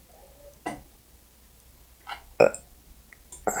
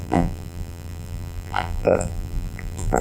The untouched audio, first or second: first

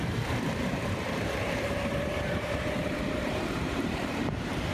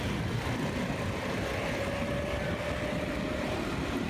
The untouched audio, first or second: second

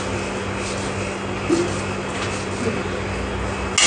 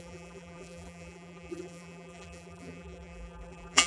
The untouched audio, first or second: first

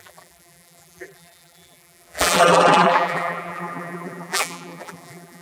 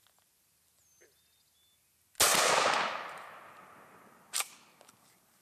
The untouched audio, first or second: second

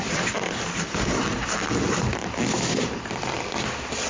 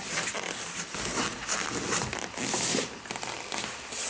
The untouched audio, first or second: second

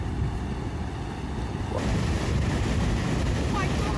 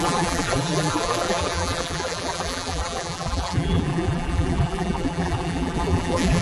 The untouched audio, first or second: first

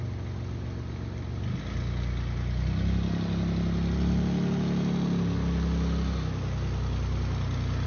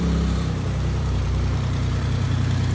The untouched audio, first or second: first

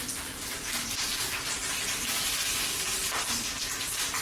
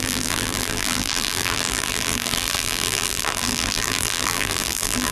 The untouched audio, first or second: first